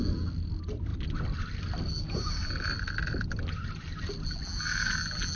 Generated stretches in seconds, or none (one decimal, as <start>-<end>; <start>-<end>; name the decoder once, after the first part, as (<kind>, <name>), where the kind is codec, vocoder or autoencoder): none